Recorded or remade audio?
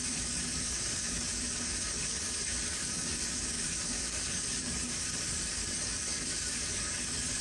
remade